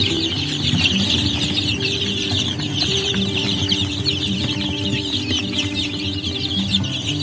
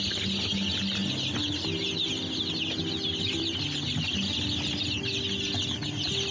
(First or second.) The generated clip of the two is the first